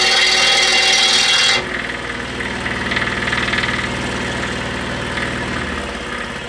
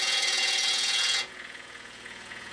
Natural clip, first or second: first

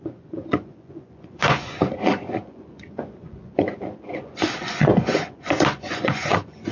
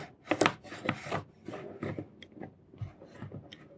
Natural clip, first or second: second